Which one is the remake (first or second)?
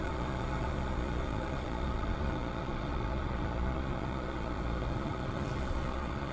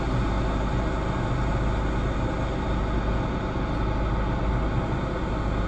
first